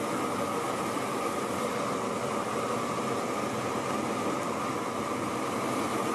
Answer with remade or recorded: recorded